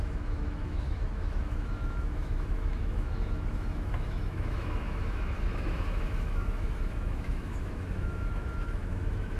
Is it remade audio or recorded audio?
remade